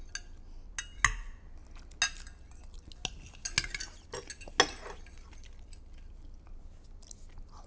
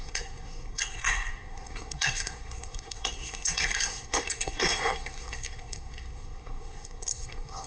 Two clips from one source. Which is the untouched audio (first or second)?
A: first